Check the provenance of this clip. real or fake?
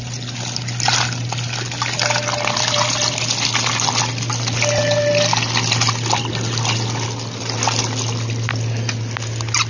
real